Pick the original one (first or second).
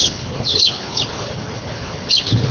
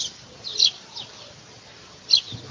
second